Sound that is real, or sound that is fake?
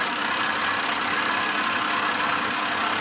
real